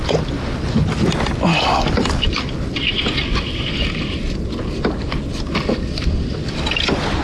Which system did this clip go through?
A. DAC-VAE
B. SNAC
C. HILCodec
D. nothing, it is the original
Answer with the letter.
D